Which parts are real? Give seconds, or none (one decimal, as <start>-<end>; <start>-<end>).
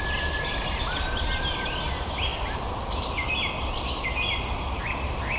0.0-5.4